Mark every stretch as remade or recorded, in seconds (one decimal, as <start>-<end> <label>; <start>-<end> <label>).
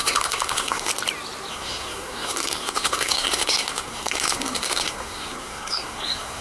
0.0-0.9 remade; 0.9-1.5 recorded; 1.5-6.4 remade